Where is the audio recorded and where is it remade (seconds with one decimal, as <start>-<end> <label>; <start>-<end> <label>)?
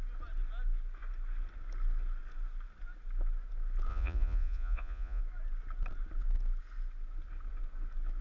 0.0-3.9 recorded; 3.9-5.2 remade; 5.2-8.2 recorded